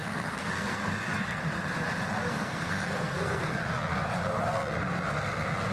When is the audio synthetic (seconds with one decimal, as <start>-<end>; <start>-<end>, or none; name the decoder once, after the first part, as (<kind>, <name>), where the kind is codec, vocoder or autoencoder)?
0.0-1.5 (codec, SNAC); 2.2-3.6